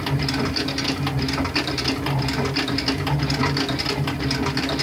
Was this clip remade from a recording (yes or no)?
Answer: no